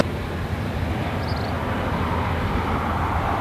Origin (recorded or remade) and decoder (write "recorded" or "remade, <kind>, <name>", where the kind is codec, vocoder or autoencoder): recorded